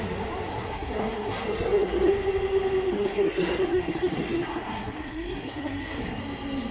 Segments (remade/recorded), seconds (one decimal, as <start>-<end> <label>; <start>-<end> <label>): 0.0-0.5 recorded; 0.5-2.1 remade; 2.1-2.9 recorded; 2.9-6.2 remade; 6.2-6.7 recorded

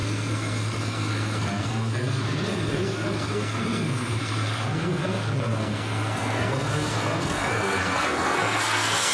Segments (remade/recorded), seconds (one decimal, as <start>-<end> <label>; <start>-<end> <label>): 0.0-9.1 remade

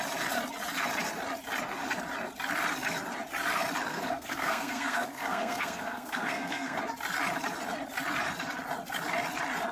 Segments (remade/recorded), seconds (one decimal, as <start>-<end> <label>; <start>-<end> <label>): 0.0-3.9 recorded; 3.9-6.8 remade; 6.8-9.7 recorded